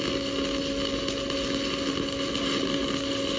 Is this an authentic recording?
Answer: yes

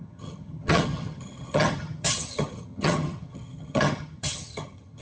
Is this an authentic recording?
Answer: no